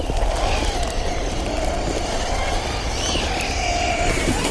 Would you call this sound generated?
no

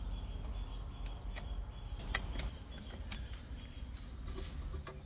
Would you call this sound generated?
no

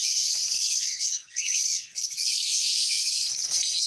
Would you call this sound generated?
yes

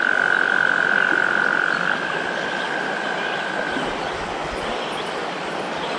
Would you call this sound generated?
no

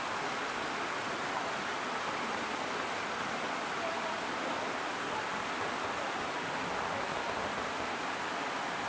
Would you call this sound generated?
no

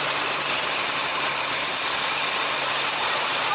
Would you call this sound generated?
yes